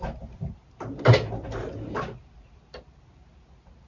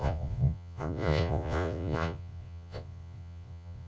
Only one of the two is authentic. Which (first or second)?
first